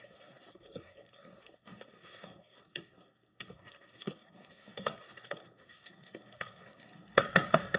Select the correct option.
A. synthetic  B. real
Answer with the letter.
A